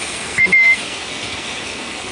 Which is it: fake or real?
fake